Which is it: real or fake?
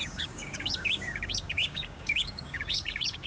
fake